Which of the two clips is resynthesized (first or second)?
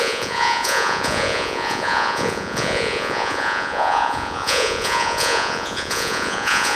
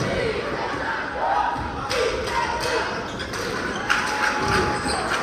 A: first